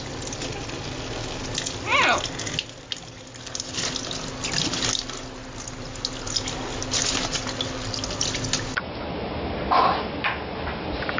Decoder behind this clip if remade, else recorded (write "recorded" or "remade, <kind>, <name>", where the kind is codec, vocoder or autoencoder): recorded